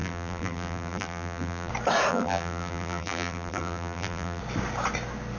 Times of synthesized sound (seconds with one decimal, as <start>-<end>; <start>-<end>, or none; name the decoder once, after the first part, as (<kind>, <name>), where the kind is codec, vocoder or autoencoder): 0.0-1.7 (vocoder, BigVGAN v2); 2.1-4.4